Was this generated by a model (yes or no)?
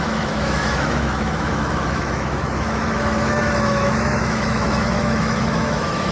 yes